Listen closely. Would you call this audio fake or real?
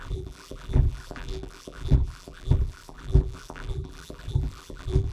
fake